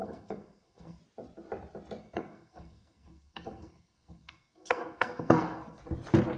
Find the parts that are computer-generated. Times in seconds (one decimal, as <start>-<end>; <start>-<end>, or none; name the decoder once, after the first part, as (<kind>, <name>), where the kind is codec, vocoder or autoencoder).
0.0-1.0 (codec, SNAC); 2.0-5.8